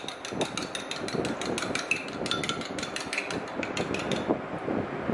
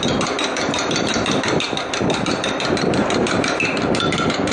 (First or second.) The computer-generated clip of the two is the second